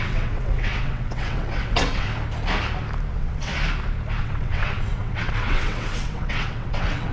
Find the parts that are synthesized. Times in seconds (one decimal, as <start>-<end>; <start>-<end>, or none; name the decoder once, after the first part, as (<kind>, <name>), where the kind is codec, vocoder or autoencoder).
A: 0.0-2.1 (vocoder, WaveNeXt); 3.1-3.5; 4.2-7.1